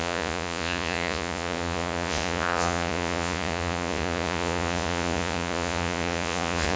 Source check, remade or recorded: remade